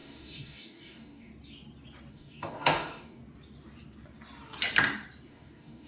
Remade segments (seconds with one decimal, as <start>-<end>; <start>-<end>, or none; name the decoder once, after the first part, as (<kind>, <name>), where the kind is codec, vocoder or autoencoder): 0.0-1.3 (codec, DAC); 2.1-3.2; 5.3-5.9